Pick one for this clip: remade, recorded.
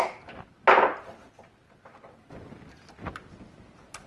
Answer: recorded